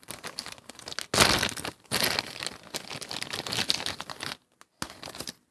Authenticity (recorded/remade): recorded